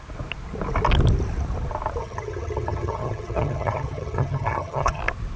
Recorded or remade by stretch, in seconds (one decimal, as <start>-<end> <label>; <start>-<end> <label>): 0.0-2.0 recorded; 2.0-5.0 remade; 5.0-5.4 recorded